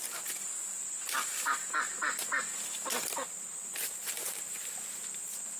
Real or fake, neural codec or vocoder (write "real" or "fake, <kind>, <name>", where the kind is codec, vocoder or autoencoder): real